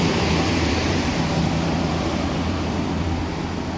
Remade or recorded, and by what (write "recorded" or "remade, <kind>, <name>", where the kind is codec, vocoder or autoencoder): remade, vocoder, BigVGAN v2